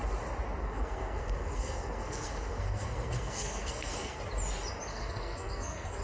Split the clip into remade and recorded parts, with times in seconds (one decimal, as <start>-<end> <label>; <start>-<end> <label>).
0.0-0.6 recorded; 0.6-4.2 remade; 4.2-4.9 recorded; 4.9-6.0 remade